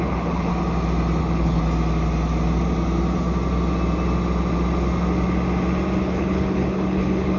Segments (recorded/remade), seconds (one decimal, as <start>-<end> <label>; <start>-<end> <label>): 0.0-0.5 remade; 0.5-1.2 recorded; 1.2-1.6 remade; 1.6-6.0 recorded; 6.0-7.4 remade